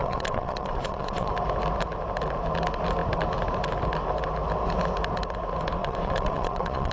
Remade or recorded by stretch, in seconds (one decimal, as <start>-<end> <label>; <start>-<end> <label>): 0.0-1.3 remade; 1.3-5.8 recorded; 5.8-6.9 remade